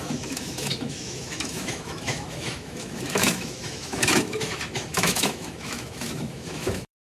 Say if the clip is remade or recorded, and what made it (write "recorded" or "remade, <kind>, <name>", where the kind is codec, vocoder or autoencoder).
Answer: remade, autoencoder, DAC-VAE